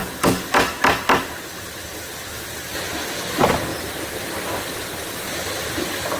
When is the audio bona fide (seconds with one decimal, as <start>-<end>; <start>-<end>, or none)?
0.0-6.2